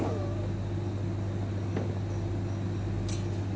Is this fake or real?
real